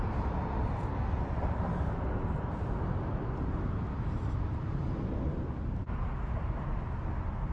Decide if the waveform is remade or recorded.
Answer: recorded